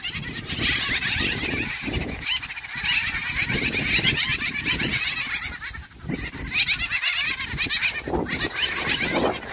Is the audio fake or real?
real